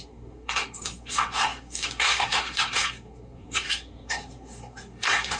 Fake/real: fake